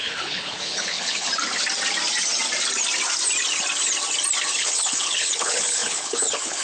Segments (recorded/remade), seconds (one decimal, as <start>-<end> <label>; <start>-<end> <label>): 0.0-1.3 remade; 1.3-4.5 recorded; 4.5-6.6 remade